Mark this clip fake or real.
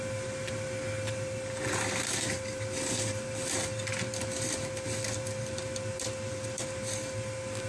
real